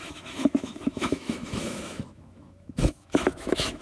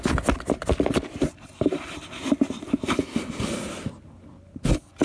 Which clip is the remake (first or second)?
first